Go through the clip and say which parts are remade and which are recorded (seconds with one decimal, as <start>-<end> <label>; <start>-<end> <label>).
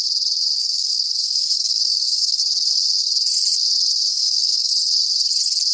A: 0.0-0.6 recorded; 0.6-2.4 remade; 2.4-4.1 recorded; 4.1-4.7 remade; 4.7-5.7 recorded